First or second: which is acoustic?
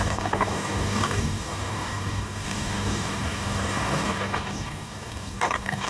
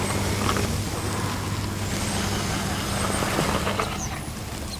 second